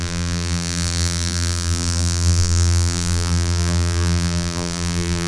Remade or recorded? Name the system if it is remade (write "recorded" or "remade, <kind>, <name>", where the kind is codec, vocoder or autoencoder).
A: remade, vocoder, BigVGAN v2